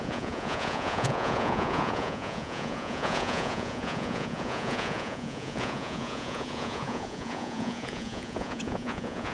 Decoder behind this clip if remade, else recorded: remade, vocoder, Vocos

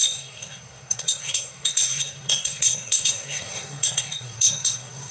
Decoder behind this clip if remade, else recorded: remade, codec, SNAC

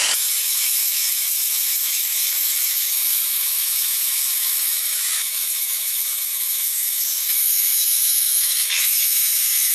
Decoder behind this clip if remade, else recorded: remade, autoencoder, DAC-VAE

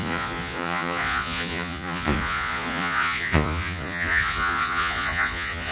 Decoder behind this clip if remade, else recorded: remade, vocoder, Vocos